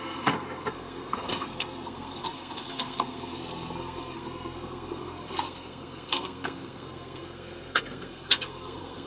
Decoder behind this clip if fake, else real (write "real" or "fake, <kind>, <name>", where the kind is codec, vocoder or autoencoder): fake, codec, SNAC